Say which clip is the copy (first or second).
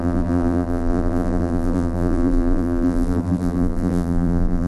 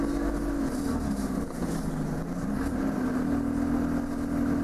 first